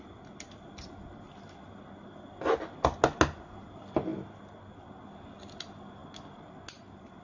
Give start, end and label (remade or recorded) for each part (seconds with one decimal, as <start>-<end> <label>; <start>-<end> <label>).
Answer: 0.0-7.2 recorded